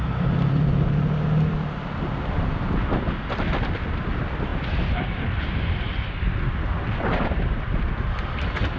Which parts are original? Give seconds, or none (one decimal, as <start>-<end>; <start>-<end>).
none